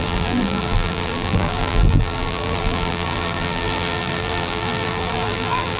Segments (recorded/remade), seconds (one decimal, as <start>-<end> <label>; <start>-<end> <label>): 0.0-5.8 remade